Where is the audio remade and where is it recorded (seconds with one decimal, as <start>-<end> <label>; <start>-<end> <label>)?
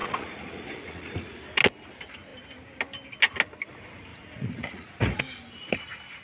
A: 0.0-1.4 remade; 1.4-4.1 recorded; 4.1-5.2 remade; 5.2-6.2 recorded